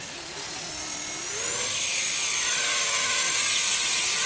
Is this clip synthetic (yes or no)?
no